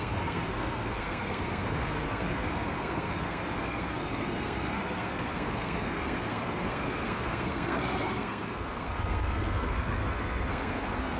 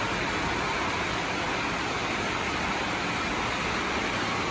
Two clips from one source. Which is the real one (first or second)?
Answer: second